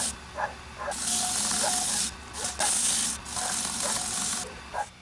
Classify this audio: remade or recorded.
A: recorded